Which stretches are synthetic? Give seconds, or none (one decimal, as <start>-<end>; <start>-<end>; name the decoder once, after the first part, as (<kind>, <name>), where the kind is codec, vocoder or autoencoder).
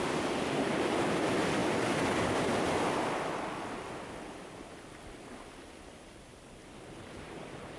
none